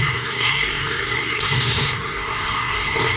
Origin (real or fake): fake